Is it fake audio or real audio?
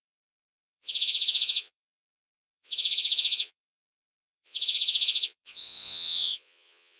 fake